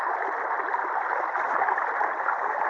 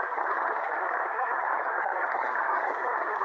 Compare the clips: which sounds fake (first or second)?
second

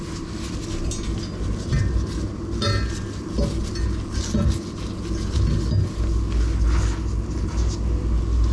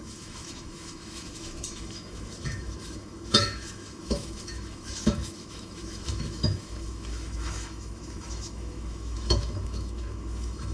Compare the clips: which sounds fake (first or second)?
second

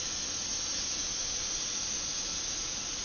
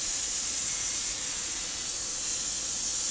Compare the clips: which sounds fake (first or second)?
second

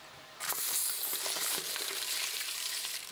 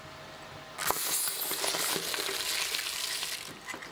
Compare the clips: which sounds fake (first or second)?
first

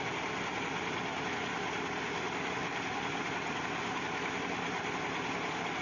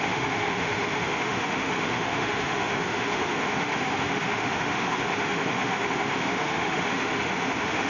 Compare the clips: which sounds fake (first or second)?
second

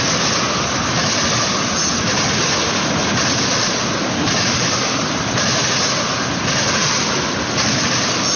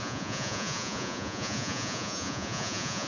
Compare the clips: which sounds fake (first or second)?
second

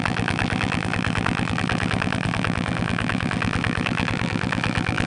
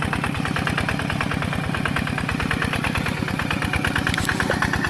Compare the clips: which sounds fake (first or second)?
first